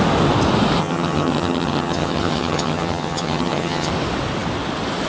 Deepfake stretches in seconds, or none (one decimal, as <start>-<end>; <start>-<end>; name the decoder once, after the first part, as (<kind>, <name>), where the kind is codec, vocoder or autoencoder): 0.8-3.9 (vocoder, HiFi-GAN)